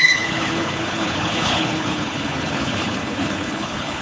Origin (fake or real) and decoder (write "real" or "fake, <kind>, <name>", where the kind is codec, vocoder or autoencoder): fake, codec, HILCodec